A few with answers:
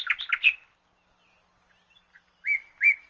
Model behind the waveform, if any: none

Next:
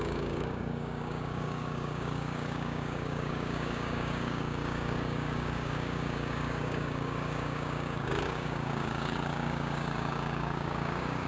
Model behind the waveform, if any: codec, DAC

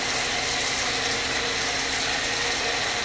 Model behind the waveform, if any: none